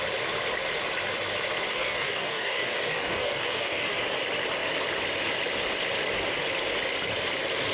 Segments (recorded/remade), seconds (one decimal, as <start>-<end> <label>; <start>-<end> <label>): 0.0-1.7 recorded; 1.7-4.0 remade; 4.0-7.7 recorded